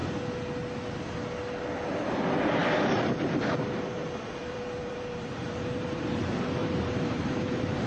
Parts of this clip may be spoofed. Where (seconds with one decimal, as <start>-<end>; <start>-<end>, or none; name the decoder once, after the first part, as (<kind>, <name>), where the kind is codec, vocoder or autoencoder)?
4.4-6.0 (vocoder, BigVGAN v2); 6.6-7.9